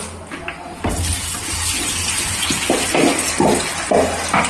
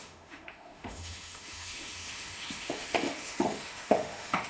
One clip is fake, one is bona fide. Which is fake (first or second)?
second